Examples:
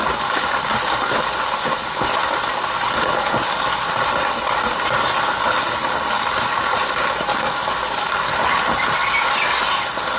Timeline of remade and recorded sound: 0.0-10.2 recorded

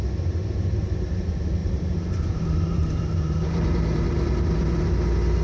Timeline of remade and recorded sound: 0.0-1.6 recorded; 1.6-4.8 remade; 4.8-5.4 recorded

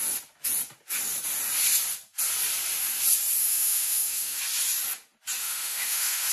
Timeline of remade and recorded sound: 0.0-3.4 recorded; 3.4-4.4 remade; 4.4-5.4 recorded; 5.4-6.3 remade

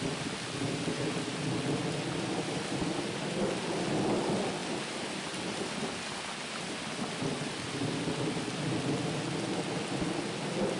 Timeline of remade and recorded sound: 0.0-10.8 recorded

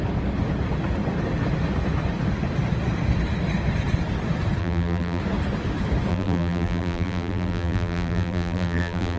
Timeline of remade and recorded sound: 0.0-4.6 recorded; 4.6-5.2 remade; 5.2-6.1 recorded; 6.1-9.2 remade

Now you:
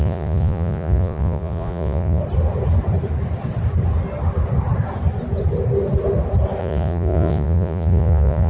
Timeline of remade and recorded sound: 0.0-2.2 remade; 2.2-6.6 recorded; 6.6-8.5 remade

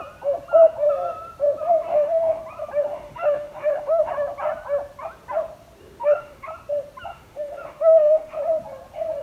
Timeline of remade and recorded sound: 0.0-1.9 recorded; 1.9-2.4 remade; 2.4-2.9 recorded; 2.9-4.1 remade; 4.1-6.0 recorded; 6.0-6.5 remade; 6.5-7.1 recorded; 7.1-8.4 remade; 8.4-9.2 recorded